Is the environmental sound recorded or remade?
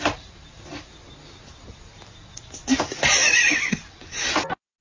recorded